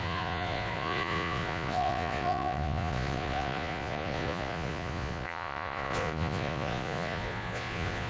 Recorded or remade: remade